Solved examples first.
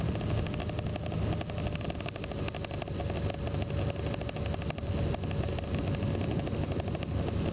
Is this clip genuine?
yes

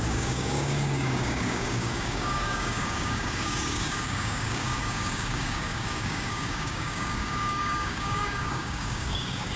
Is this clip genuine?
no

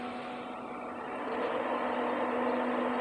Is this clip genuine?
yes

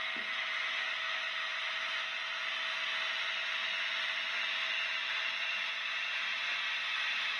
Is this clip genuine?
yes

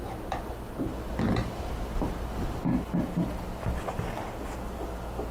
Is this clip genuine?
yes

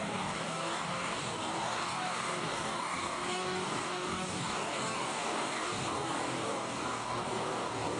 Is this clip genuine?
no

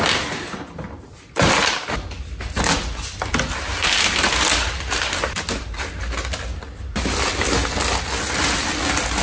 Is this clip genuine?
yes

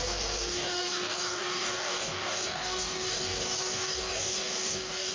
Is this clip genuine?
no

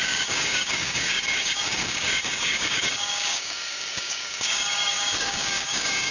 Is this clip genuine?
no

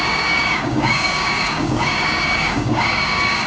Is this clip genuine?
no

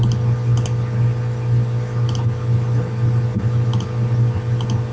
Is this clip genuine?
yes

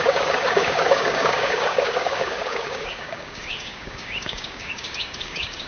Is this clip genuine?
no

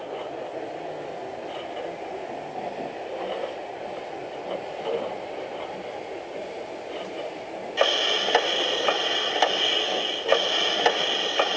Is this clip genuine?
yes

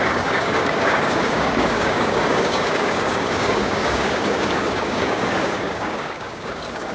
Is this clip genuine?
no